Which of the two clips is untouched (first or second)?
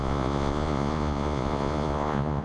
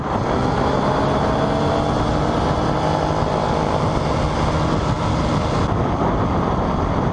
second